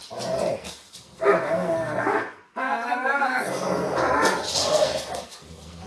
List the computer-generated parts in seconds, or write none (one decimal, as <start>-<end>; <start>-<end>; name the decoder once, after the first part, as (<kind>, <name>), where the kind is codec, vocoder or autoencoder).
0.5-4.0 (codec, SNAC); 4.6-5.9